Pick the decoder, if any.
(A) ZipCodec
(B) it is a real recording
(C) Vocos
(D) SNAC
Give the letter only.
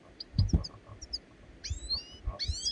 B